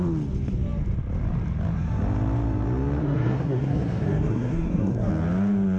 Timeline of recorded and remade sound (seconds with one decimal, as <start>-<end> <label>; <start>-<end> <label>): 0.0-3.0 recorded; 3.0-5.1 remade; 5.1-5.8 recorded